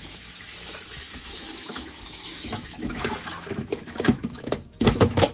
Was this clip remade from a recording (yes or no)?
yes